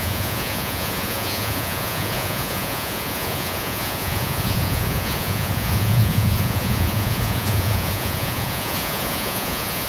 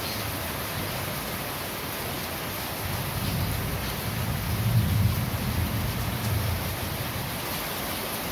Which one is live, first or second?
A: second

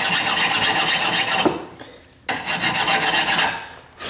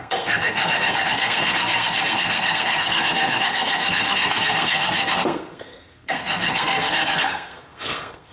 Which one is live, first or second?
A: first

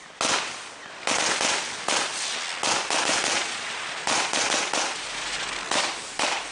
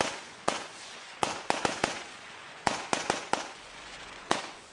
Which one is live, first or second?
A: first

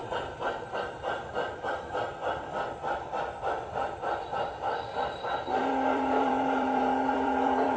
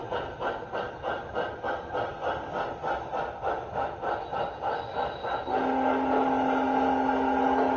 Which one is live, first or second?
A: second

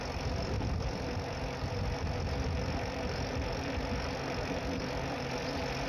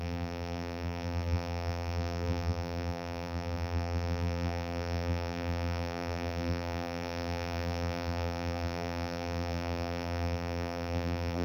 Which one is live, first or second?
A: first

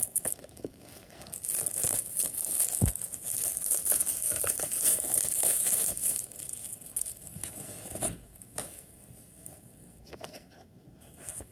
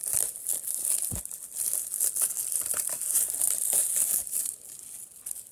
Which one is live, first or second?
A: second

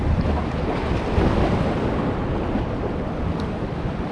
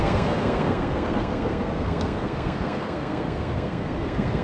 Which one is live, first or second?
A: first